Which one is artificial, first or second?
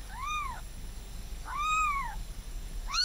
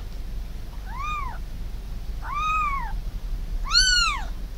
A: first